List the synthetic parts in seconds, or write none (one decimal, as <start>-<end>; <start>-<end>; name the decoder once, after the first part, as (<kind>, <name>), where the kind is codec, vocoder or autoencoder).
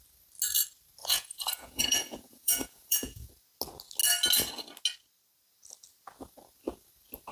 1.0-3.3 (vocoder, Vocos)